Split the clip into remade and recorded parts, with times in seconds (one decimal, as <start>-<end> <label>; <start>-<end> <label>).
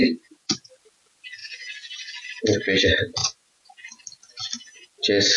0.0-0.7 remade; 0.7-3.2 recorded; 3.2-4.0 remade; 4.0-5.4 recorded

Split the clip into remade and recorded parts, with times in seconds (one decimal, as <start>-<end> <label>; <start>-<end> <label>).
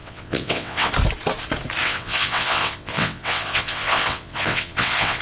0.0-0.9 remade; 0.9-1.8 recorded; 1.8-5.2 remade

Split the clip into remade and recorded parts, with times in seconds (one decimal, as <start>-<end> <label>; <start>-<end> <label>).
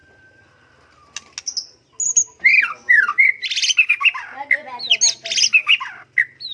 0.0-6.5 recorded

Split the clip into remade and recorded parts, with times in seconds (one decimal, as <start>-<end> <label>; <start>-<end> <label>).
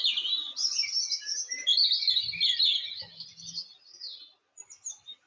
0.0-5.3 recorded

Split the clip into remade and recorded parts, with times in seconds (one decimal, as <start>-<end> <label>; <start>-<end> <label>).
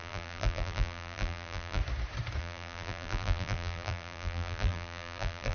0.0-1.8 remade; 1.8-2.4 recorded; 2.4-5.5 remade